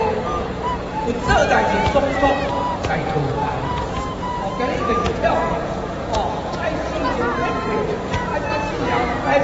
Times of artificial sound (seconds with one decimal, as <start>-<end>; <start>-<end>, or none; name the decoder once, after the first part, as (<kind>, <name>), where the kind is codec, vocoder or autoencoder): 0.0-8.3 (vocoder, Vocos)